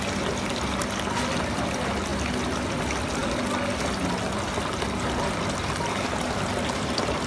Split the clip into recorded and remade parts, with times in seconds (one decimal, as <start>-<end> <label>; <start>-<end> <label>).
0.0-7.3 recorded